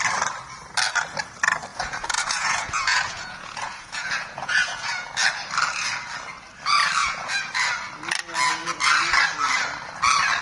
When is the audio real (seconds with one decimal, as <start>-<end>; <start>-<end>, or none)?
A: 0.0-1.7; 5.1-7.0; 7.5-10.4